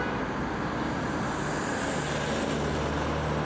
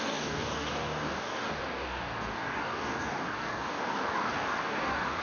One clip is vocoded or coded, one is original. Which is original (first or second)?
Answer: first